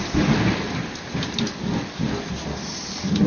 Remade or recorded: recorded